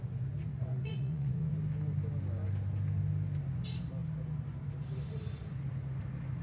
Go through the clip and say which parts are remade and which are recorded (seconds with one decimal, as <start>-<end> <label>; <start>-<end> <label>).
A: 0.0-0.5 recorded; 0.5-1.5 remade; 1.5-6.4 recorded